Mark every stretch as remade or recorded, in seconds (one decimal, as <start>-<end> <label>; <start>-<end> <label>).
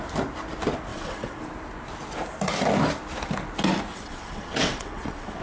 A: 0.0-0.9 recorded; 0.9-1.4 remade; 1.4-3.9 recorded; 3.9-5.4 remade